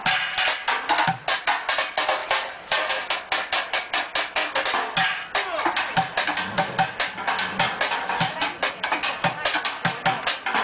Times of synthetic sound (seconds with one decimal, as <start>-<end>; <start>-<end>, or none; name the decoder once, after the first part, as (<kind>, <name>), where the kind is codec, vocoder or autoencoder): 2.2-2.9 (vocoder, BigVGAN v2)